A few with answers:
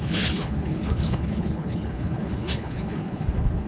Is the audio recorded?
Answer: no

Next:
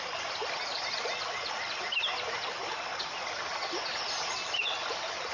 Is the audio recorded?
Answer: yes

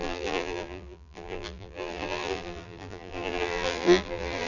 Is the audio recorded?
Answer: no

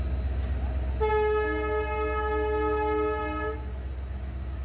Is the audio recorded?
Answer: yes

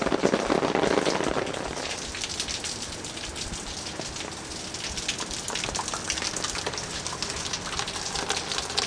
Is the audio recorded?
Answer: yes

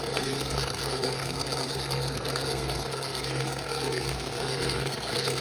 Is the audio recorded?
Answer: no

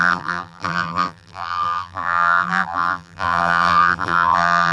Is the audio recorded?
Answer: no